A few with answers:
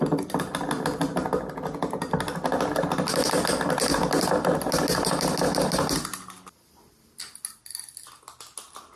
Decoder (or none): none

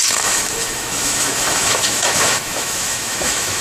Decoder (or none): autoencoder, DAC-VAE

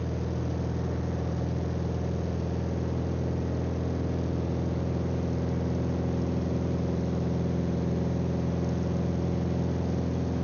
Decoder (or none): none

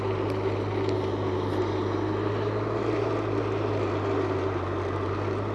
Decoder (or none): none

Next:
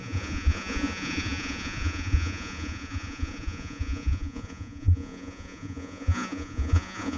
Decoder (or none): vocoder, Vocos